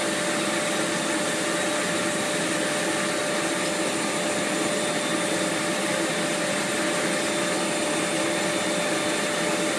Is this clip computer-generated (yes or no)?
no